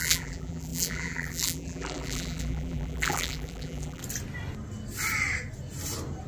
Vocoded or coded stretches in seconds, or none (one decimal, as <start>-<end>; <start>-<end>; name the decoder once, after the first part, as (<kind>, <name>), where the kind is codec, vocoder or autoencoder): 0.0-4.0 (vocoder, BigVGAN v2)